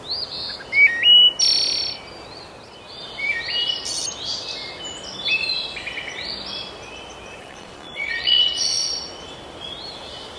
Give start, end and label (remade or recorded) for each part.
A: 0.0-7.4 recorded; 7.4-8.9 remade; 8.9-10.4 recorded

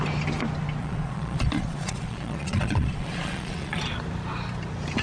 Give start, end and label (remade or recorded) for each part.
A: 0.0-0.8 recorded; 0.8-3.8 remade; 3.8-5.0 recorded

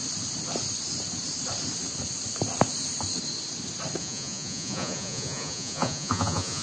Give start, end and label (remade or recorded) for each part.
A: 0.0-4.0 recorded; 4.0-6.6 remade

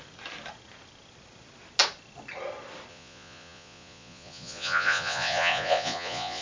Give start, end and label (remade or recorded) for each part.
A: 0.0-2.9 recorded; 2.9-6.4 remade

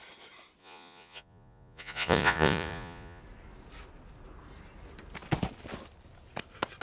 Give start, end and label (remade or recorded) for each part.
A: 0.0-0.6 recorded; 0.6-3.2 remade; 3.2-6.8 recorded